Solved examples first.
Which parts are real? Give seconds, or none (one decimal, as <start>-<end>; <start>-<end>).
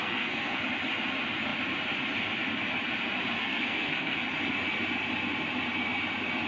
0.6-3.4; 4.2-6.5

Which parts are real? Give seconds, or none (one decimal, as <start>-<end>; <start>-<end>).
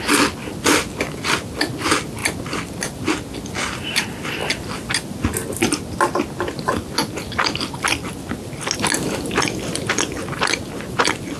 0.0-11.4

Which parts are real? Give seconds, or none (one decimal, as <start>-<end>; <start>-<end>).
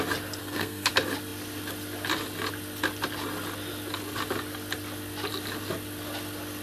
0.0-0.4; 0.9-6.6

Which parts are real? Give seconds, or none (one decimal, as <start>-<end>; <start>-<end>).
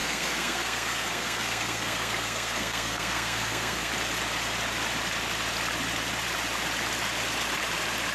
3.9-8.1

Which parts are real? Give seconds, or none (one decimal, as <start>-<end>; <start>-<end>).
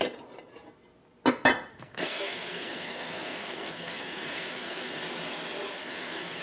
0.0-1.7; 5.0-5.8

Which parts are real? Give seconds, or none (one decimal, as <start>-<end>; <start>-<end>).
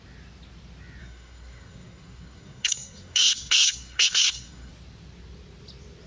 0.0-1.0; 4.7-6.1